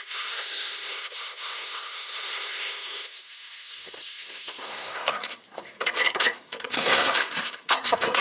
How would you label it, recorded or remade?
remade